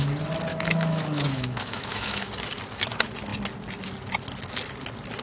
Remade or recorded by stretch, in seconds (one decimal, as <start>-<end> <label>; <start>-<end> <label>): 0.0-0.5 recorded; 0.5-2.3 remade; 2.3-5.2 recorded